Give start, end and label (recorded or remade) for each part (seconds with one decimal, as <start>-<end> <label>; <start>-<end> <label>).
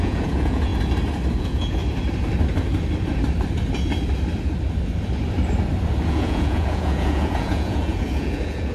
0.0-0.7 remade; 0.7-1.4 recorded; 1.4-1.8 remade; 1.8-6.1 recorded; 6.1-8.7 remade